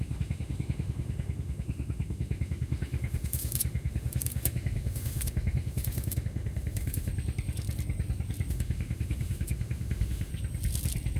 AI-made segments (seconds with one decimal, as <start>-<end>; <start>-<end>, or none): 0.0-7.1; 8.5-10.3